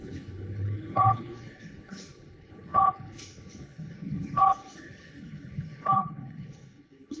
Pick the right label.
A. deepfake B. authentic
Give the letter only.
A